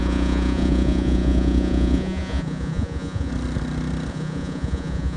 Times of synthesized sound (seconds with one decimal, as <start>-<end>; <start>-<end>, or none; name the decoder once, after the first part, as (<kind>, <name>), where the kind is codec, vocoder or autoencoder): 0.0-3.3 (vocoder, Vocos); 4.1-5.2